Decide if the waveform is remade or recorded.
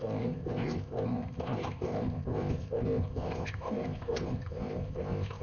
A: remade